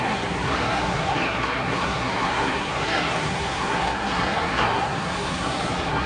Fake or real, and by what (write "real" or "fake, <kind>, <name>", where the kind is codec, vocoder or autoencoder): fake, codec, SNAC